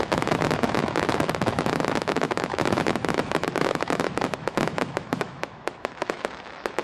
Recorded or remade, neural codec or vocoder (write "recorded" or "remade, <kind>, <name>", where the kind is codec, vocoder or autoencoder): remade, autoencoder, DAC-VAE